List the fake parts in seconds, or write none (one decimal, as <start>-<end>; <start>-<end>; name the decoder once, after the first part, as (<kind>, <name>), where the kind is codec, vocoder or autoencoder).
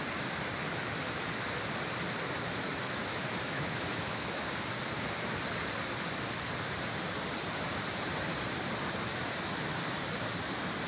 2.7-4.4 (autoencoder, DAC-VAE)